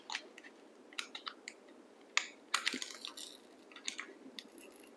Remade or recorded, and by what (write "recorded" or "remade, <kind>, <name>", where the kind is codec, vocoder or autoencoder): recorded